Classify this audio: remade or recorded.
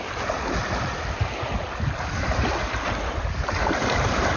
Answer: recorded